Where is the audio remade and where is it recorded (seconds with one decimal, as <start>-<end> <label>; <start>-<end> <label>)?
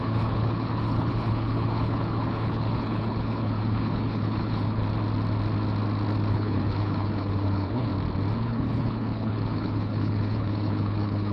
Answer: 0.0-4.8 remade; 4.8-6.3 recorded; 6.3-7.9 remade; 7.9-8.4 recorded; 8.4-11.3 remade